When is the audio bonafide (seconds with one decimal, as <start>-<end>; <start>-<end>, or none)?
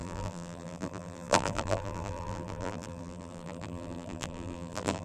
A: none